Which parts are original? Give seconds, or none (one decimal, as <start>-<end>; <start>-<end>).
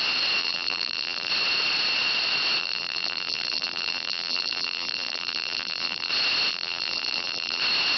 0.0-0.4; 1.3-2.6; 6.1-6.5; 7.6-8.0